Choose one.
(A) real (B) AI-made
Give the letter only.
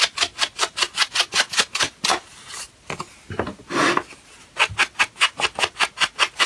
A